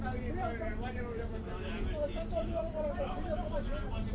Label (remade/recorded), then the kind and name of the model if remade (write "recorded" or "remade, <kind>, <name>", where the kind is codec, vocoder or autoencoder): remade, vocoder, BigVGAN v2